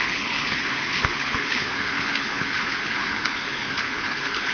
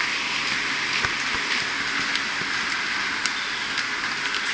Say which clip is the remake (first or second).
first